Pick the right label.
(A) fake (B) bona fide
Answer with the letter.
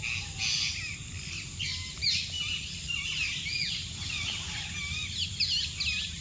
B